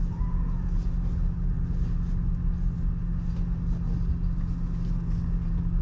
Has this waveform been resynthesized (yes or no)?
no